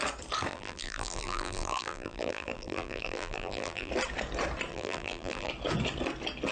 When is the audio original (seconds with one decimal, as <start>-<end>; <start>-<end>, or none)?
0.0-0.5; 3.9-4.7; 5.5-6.5